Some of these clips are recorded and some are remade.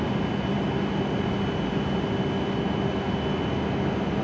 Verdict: recorded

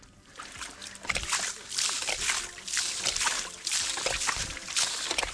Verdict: recorded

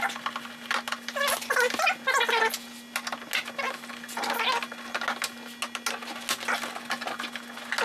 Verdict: recorded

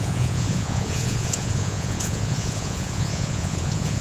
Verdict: remade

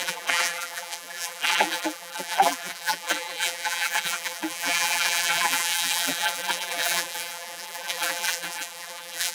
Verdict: remade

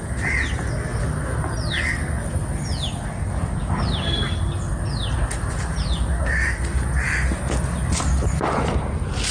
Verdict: recorded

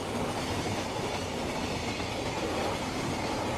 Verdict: recorded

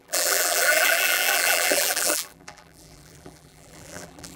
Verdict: remade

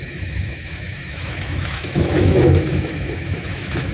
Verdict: remade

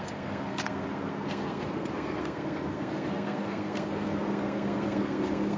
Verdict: remade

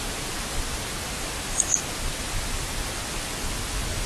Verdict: recorded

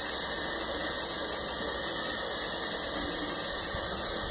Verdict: recorded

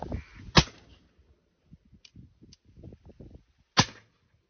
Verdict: recorded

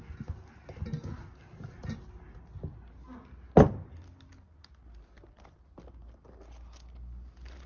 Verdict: recorded